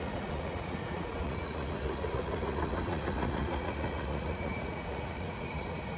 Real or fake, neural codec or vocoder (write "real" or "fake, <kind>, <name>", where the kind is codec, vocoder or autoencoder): fake, vocoder, Vocos